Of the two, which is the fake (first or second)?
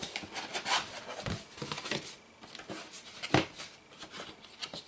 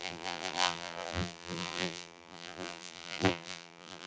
second